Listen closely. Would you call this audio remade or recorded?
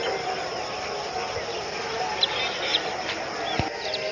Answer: recorded